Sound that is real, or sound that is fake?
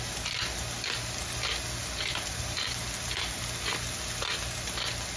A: real